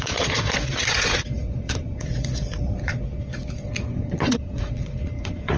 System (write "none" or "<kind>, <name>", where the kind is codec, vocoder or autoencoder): vocoder, Vocos